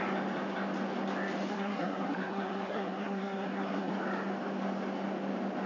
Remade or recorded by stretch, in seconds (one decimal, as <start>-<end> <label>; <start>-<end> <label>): 0.0-1.5 recorded; 1.5-3.9 remade; 3.9-5.7 recorded